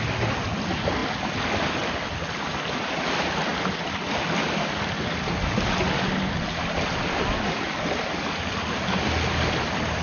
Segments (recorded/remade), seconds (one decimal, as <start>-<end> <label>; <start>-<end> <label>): 0.0-10.0 recorded